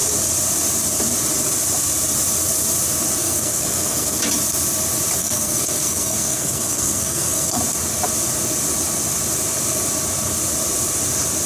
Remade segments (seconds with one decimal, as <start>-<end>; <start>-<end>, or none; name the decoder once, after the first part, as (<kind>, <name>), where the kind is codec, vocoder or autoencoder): 3.2-4.2 (codec, SNAC); 5.2-7.6